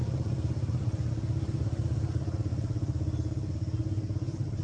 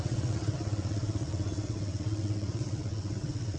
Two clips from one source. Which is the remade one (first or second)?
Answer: second